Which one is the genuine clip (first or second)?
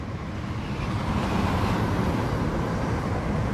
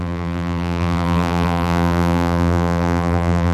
first